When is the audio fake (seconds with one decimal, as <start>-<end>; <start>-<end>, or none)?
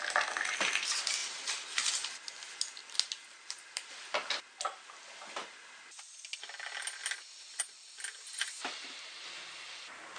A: none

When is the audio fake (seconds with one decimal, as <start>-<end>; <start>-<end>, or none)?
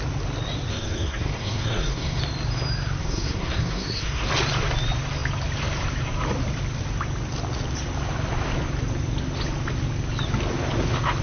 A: 0.7-2.2; 3.0-4.3